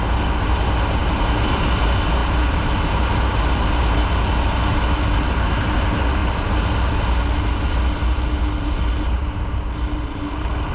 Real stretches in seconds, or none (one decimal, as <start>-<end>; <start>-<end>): 0.0-10.7